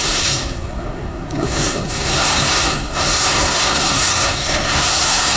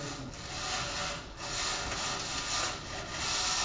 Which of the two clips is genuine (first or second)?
second